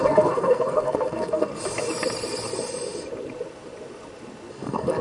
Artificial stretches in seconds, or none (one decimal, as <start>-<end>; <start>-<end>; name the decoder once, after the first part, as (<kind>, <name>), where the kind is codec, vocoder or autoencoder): 0.0-1.5 (codec, SNAC); 4.5-5.0